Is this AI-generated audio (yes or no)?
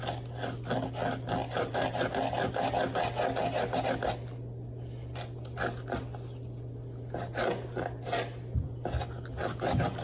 no